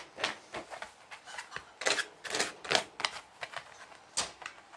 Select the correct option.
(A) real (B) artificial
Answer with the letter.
A